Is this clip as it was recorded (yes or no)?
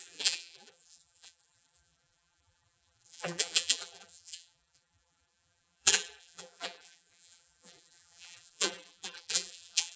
no